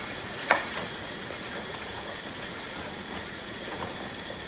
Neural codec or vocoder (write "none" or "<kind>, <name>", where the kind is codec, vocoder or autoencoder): vocoder, Vocos